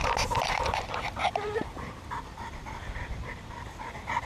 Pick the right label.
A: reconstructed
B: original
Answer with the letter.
A